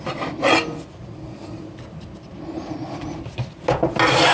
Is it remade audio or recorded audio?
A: recorded